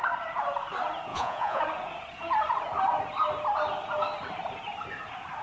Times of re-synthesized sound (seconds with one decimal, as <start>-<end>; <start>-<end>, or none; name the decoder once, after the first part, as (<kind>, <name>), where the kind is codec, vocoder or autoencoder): 1.1-1.6 (vocoder, Vocos)